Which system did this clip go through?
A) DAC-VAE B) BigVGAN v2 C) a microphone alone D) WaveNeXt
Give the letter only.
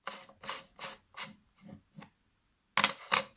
C